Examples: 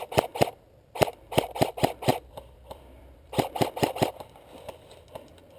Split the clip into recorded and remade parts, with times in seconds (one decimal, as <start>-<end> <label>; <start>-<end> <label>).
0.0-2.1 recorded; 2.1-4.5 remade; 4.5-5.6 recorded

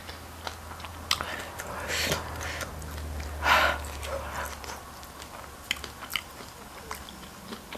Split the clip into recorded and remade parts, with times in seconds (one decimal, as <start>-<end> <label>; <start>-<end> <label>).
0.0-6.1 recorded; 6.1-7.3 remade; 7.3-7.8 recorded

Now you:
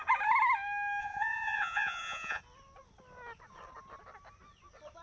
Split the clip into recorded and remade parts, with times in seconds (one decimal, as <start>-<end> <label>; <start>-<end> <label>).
0.0-1.0 recorded; 1.0-2.4 remade; 2.4-5.0 recorded